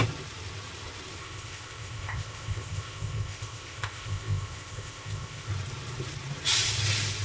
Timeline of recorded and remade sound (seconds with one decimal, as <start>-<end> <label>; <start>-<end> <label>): 0.0-1.2 recorded; 1.2-5.5 remade; 5.5-7.2 recorded